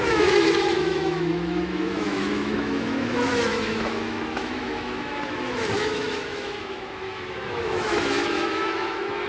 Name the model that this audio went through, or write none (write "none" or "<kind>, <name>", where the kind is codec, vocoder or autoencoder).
autoencoder, DAC-VAE